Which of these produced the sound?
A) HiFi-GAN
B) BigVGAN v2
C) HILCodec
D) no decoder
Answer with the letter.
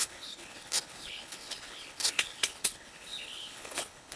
C